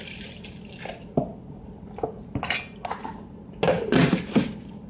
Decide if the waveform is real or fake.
real